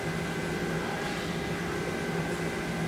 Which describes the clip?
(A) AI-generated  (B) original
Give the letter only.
B